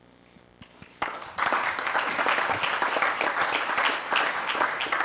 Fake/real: real